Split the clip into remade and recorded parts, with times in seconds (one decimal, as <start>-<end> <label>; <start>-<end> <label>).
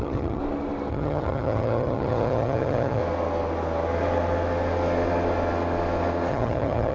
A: 0.0-0.4 remade; 0.4-0.9 recorded; 0.9-3.0 remade; 3.0-6.3 recorded; 6.3-6.9 remade